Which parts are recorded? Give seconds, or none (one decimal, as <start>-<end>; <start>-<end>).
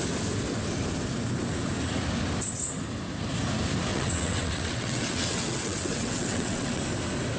0.0-3.9; 6.8-7.4